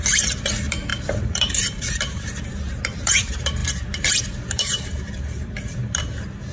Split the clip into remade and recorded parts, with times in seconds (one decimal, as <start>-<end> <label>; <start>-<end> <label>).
0.0-6.5 remade